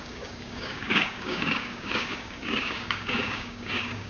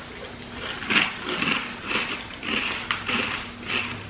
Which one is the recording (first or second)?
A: second